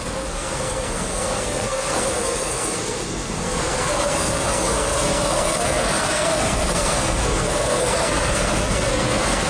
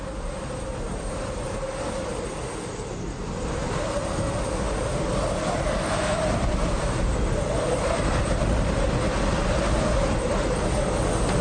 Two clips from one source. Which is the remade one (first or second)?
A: first